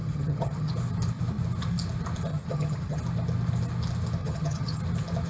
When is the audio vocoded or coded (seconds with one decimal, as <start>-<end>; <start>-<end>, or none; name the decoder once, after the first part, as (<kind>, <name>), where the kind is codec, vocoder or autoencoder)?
0.0-0.7 (vocoder, HiFi-GAN); 2.3-3.0; 4.2-4.8